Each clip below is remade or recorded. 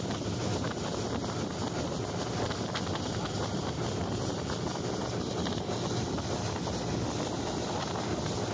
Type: recorded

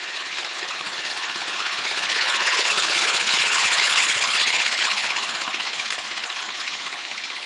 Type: remade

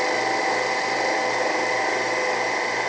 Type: recorded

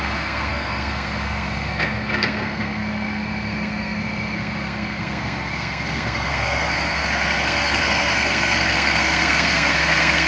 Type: remade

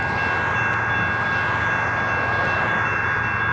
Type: recorded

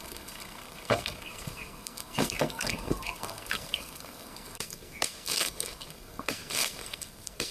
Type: remade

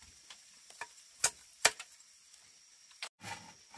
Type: recorded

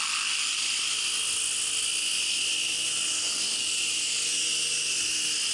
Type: recorded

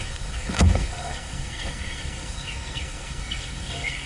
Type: remade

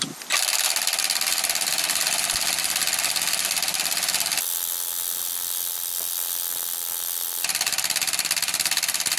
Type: recorded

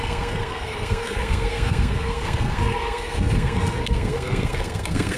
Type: remade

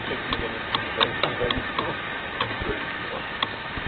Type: remade